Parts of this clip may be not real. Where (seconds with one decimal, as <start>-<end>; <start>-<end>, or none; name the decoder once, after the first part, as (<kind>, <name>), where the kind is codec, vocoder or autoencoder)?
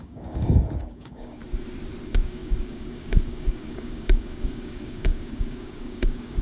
0.0-1.4 (codec, DAC); 2.0-6.4